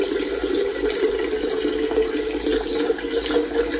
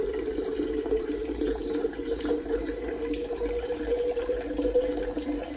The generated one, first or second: second